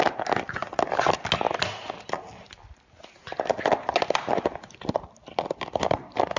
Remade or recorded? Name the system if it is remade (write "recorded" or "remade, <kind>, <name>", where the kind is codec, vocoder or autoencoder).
recorded